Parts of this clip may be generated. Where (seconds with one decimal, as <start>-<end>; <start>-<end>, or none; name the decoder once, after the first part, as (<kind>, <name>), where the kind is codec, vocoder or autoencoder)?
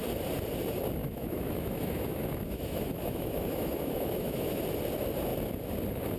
1.0-4.6 (autoencoder, DAC-VAE)